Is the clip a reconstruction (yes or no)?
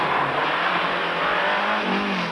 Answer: no